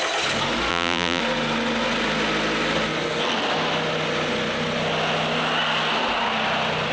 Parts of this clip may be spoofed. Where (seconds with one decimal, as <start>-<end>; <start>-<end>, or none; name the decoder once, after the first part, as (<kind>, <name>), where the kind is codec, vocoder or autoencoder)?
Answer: 0.7-1.2 (vocoder, BigVGAN v2)